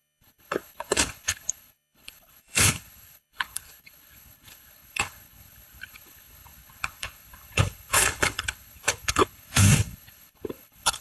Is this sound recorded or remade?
remade